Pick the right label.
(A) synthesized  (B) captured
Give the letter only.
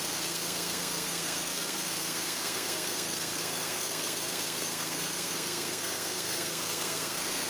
A